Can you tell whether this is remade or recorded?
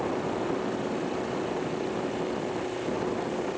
recorded